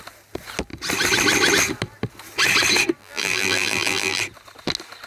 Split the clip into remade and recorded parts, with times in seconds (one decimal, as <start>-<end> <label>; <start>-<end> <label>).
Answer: 0.0-3.0 recorded; 3.0-4.2 remade; 4.2-5.1 recorded